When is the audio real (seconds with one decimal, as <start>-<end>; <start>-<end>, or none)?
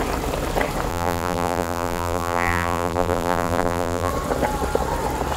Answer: 0.0-0.9; 4.1-5.4